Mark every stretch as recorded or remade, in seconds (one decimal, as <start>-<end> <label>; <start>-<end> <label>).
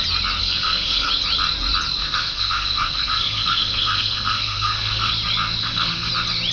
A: 0.0-0.4 recorded; 0.4-1.1 remade; 1.1-2.0 recorded; 2.0-5.1 remade; 5.1-5.6 recorded; 5.6-6.1 remade; 6.1-6.5 recorded